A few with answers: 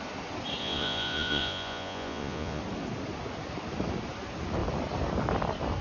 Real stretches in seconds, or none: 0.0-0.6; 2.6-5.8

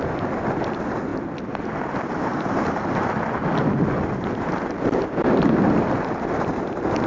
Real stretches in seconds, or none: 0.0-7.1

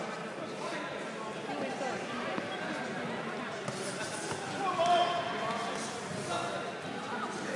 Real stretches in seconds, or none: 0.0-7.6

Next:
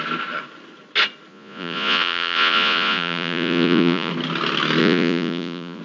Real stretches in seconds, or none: 0.0-1.3; 4.1-4.8

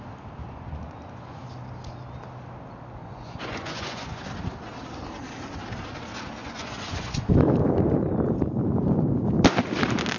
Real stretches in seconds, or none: 0.0-0.4; 1.4-3.0; 4.2-6.4; 7.3-10.2